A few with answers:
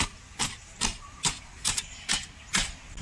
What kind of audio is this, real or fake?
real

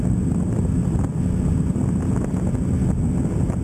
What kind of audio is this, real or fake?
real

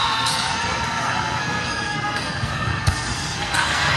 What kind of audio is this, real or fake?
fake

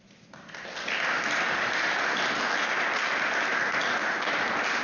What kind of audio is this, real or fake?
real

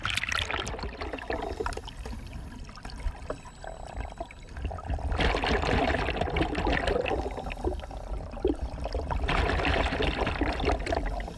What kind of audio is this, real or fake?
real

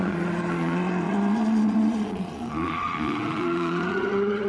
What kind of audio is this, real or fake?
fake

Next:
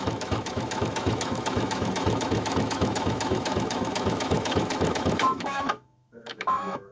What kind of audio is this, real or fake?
fake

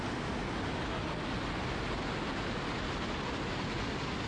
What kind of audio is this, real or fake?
real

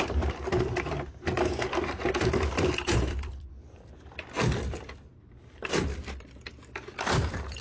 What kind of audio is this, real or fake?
fake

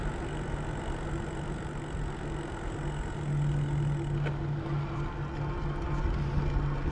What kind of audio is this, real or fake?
real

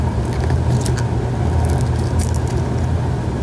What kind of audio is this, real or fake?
real